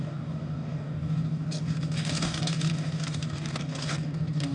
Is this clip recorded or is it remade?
remade